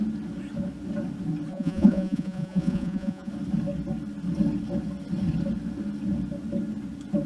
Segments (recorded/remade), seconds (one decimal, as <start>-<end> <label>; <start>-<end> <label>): 0.0-1.5 recorded; 1.5-3.3 remade; 3.3-7.3 recorded